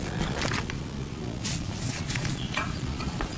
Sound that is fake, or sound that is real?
fake